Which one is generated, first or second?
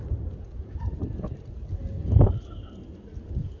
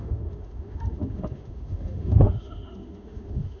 second